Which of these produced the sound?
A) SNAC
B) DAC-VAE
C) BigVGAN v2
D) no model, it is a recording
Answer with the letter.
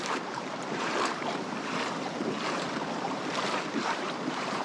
C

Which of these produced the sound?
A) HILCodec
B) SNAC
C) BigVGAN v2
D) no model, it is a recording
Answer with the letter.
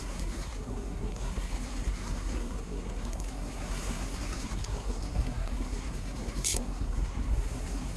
B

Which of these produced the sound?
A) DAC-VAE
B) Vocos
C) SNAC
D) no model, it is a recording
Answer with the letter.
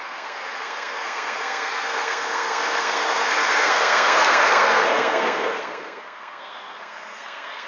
C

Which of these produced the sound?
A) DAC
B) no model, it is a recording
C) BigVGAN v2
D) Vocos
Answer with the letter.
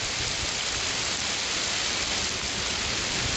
B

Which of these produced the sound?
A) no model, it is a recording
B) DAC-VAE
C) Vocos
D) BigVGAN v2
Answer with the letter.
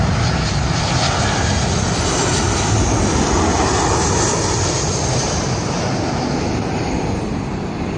A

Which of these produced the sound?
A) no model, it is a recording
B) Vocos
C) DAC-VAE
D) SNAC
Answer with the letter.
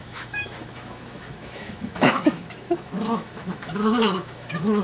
C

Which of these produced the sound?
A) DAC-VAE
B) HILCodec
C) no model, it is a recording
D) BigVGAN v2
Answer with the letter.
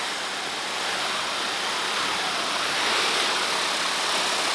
C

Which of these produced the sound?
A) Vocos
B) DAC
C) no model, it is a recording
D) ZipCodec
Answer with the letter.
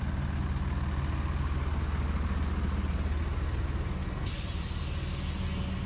C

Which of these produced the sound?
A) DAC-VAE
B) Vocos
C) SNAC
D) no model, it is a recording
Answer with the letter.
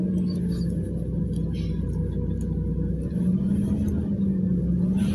D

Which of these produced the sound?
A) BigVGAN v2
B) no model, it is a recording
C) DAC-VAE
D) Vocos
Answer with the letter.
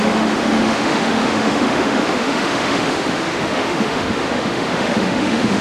C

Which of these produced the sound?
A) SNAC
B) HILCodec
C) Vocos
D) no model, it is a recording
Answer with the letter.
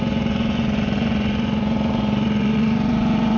C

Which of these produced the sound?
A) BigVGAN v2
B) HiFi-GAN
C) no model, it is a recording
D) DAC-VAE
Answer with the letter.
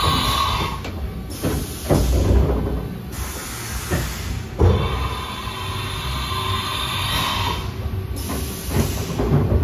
C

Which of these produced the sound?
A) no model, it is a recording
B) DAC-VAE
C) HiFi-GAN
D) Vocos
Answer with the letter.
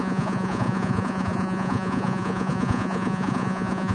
D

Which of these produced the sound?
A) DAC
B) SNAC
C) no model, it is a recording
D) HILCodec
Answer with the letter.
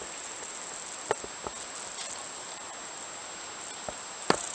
C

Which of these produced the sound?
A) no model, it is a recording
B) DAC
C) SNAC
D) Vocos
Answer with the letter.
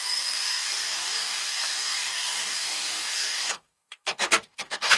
B